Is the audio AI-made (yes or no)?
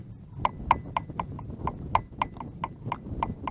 no